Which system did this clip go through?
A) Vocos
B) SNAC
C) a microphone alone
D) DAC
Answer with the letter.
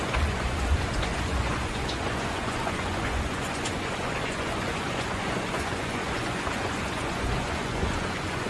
A